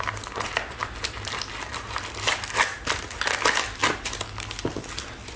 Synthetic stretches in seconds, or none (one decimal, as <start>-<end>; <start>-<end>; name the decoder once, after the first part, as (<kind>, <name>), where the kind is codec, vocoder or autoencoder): none